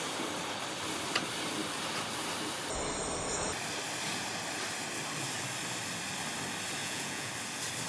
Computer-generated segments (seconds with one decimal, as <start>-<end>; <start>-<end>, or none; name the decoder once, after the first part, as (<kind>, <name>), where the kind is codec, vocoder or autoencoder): 6.8-7.3 (vocoder, Vocos)